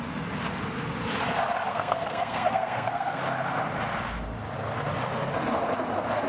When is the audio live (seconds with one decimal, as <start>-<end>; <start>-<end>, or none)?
0.0-1.7; 3.2-6.3